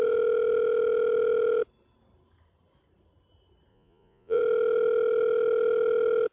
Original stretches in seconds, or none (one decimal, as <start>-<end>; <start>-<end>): 0.0-3.7; 4.4-6.3